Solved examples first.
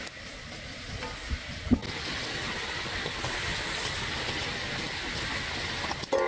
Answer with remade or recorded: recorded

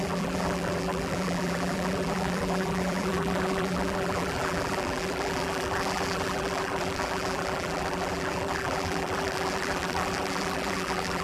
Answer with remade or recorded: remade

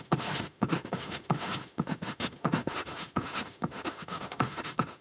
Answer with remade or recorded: remade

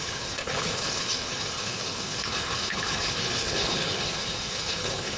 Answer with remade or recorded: remade